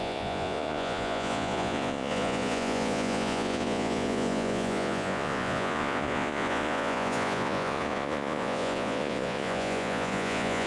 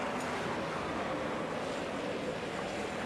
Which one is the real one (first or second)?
second